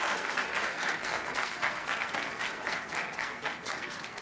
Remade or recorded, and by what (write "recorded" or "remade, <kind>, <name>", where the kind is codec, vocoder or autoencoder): remade, codec, SNAC